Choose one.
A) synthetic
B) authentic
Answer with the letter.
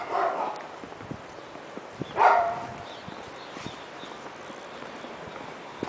B